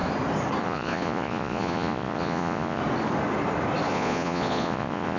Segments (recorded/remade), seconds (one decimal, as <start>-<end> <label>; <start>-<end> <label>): 0.0-0.6 recorded; 0.6-2.8 remade; 2.8-3.9 recorded; 3.9-5.2 remade